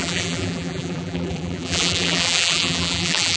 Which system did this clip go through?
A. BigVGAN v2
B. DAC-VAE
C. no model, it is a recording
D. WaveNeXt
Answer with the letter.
A